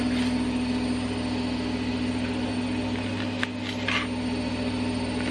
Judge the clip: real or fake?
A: real